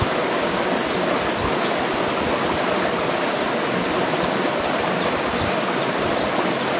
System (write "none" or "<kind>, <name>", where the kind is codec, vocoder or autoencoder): none